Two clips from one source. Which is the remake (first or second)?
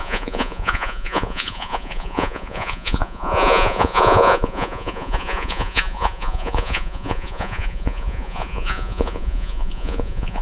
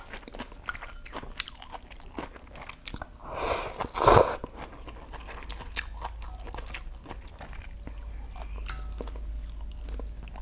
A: first